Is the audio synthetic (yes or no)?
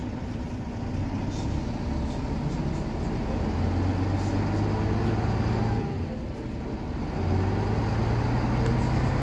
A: no